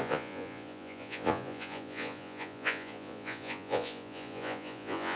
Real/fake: fake